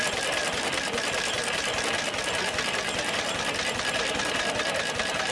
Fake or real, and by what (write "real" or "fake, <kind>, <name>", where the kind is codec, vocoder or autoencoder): fake, vocoder, BigVGAN v2